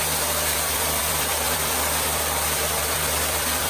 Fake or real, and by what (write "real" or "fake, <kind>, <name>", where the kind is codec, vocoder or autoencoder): fake, vocoder, BigVGAN v2